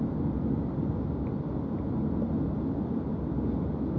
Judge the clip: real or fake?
real